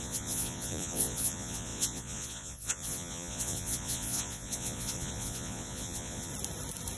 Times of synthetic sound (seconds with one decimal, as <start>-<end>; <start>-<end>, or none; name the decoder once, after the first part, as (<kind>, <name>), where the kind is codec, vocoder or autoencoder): 0.0-6.3 (vocoder, Vocos)